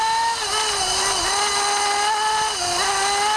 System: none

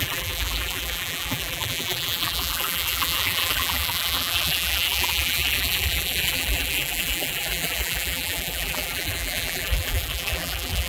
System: vocoder, BigVGAN v2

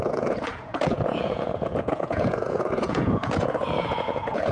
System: vocoder, Vocos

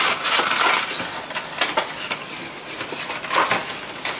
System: none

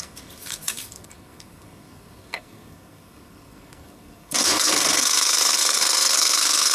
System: codec, SNAC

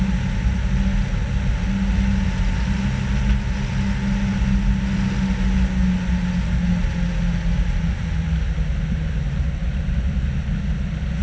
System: none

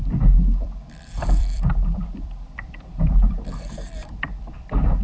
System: vocoder, BigVGAN v2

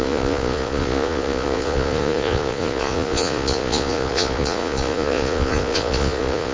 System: vocoder, Vocos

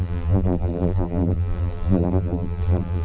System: vocoder, BigVGAN v2